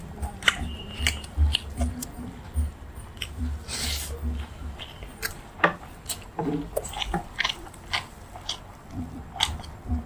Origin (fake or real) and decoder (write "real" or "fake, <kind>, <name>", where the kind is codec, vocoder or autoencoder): fake, vocoder, BigVGAN v2